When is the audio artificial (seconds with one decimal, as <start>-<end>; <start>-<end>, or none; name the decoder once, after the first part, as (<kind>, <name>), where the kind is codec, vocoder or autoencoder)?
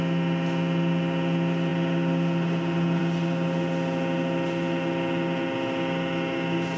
none